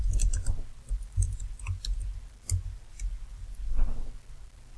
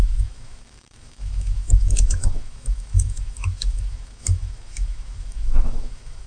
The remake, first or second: second